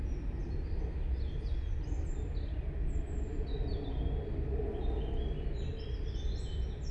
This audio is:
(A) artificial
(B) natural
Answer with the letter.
B